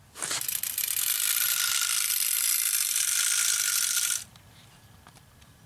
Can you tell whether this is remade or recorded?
recorded